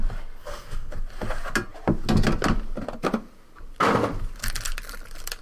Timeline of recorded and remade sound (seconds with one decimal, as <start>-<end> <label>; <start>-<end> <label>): 0.0-0.4 recorded; 0.4-0.9 remade; 0.9-5.4 recorded